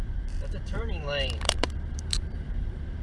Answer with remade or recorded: remade